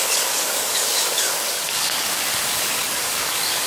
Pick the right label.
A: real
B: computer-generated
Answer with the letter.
B